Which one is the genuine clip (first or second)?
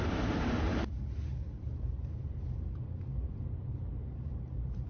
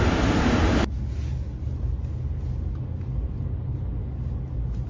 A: second